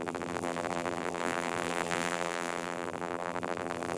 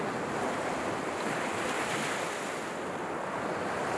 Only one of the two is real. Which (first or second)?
second